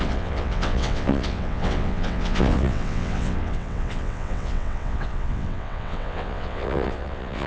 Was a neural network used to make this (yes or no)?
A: yes